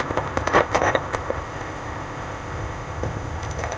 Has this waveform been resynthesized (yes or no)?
yes